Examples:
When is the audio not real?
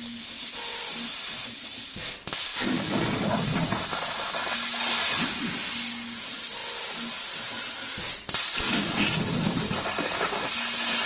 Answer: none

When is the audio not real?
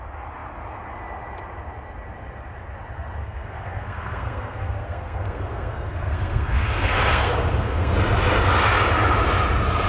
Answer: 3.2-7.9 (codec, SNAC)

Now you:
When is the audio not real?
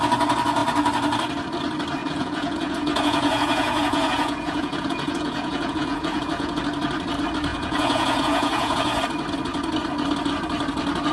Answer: 2.0-6.6 (vocoder, Vocos); 7.5-9.0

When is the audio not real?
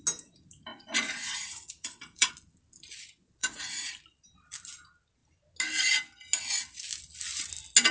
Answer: 0.7-2.3 (vocoder, Vocos); 3.4-3.9